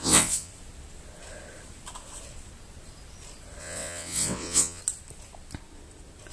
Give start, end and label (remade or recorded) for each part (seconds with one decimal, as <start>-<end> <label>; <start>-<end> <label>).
0.0-0.5 remade; 0.5-3.6 recorded; 3.6-4.8 remade; 4.8-6.3 recorded